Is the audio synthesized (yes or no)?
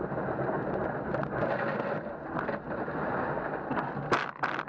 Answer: no